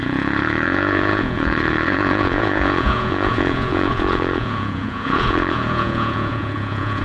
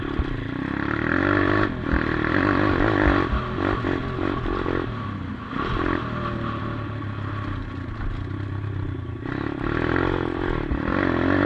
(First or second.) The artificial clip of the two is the first